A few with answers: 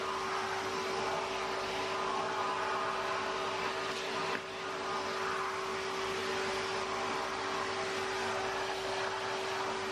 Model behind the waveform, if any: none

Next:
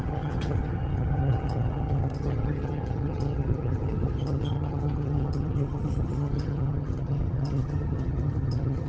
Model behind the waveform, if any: vocoder, HiFi-GAN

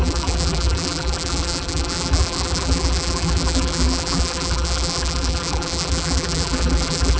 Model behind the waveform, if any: vocoder, BigVGAN v2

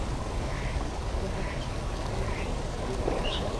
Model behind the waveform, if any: codec, DAC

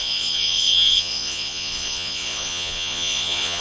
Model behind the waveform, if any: vocoder, Vocos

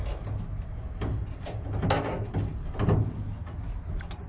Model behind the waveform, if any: none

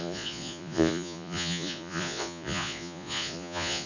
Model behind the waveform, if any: vocoder, Vocos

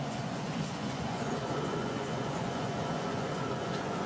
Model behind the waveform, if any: vocoder, Vocos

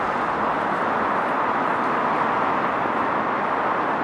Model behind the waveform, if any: none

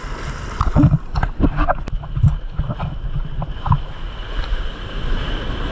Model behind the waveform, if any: none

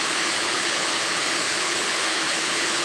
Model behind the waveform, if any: codec, HILCodec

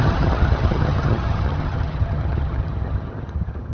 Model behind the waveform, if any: vocoder, HiFi-GAN